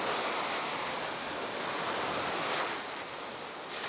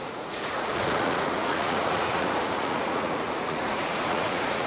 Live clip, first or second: first